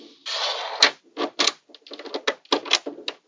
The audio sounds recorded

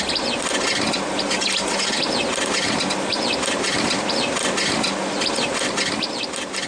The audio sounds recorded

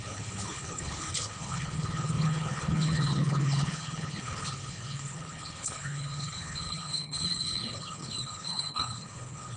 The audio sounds remade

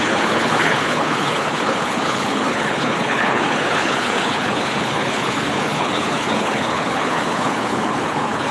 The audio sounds remade